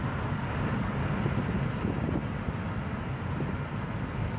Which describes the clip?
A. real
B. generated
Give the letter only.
A